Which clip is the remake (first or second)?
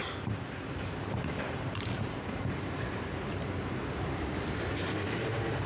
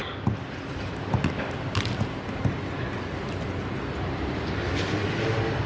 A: first